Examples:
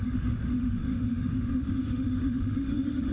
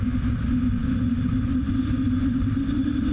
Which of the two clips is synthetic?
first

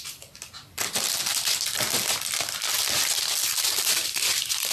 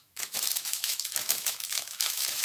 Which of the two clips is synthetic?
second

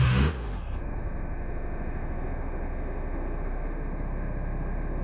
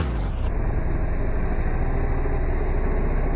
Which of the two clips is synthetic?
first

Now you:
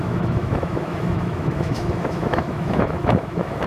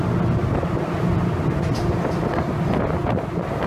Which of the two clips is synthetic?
first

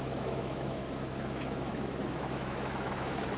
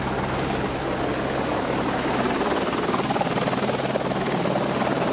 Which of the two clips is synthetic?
first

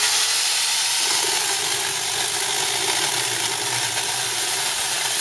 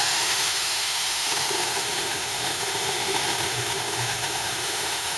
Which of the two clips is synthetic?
second